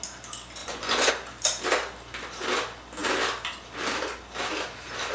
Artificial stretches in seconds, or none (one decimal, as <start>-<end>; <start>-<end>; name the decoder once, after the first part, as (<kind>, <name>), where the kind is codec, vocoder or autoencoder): 0.6-1.1 (vocoder, Vocos)